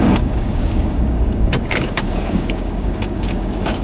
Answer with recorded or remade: remade